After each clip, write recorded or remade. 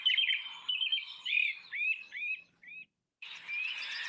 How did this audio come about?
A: remade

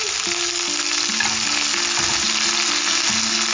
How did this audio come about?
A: recorded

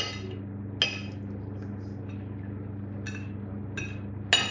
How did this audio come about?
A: recorded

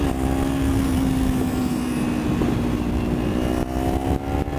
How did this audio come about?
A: recorded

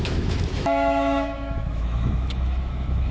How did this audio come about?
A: remade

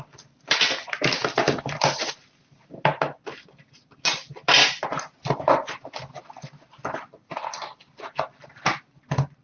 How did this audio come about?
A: recorded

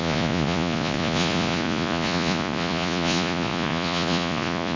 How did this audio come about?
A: remade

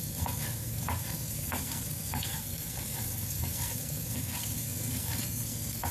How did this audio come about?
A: remade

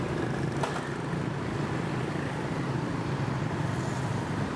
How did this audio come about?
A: recorded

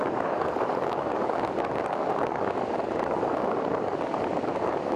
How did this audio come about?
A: remade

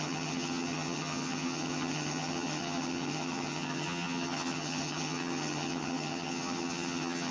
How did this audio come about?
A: remade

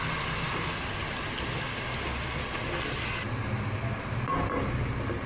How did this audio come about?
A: recorded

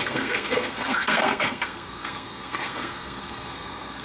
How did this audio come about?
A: remade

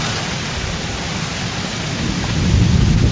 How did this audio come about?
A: recorded